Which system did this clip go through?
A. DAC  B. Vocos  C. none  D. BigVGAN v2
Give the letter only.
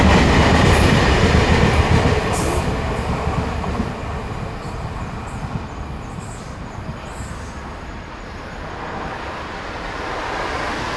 C